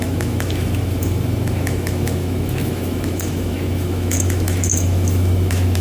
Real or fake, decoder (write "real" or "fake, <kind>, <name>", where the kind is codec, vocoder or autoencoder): fake, autoencoder, DAC-VAE